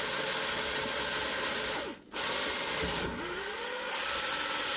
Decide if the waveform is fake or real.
real